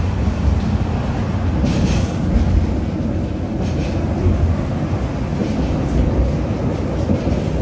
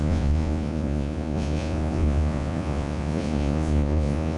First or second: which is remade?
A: second